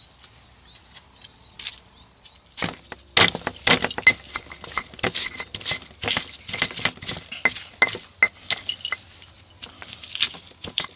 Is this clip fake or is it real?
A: real